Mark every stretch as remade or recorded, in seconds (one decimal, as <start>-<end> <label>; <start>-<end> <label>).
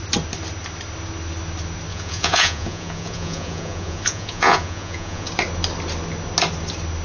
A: 0.0-1.9 recorded; 1.9-5.3 remade; 5.3-7.0 recorded